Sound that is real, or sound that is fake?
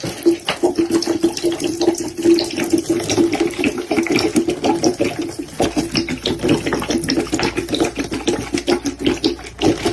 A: real